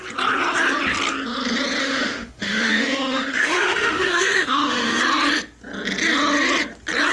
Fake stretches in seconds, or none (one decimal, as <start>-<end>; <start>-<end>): 1.8-5.0

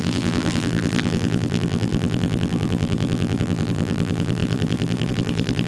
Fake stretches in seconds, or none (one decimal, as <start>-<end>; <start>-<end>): 0.0-5.7

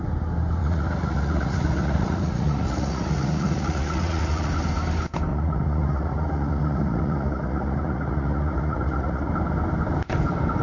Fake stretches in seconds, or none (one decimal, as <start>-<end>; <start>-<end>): 0.6-4.5; 5.3-9.3

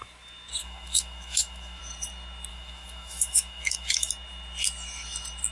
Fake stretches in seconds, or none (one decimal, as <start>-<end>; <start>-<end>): 0.6-1.8; 2.5-4.1

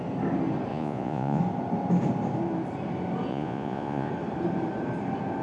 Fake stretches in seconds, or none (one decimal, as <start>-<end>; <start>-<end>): 0.7-1.4; 3.3-4.1